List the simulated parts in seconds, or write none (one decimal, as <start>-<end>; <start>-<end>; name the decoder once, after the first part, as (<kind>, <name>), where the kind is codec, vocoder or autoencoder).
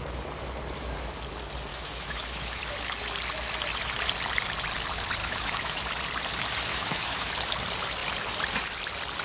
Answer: 1.7-2.6 (autoencoder, DAC-VAE); 5.2-5.8; 6.7-7.3